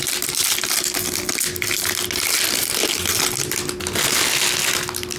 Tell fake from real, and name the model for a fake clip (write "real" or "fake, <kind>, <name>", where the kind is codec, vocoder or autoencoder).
real